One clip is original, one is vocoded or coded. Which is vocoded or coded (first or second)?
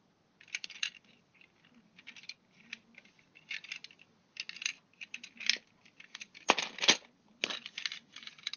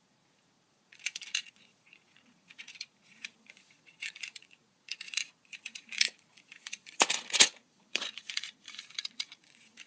second